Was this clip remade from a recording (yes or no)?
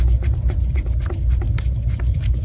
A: yes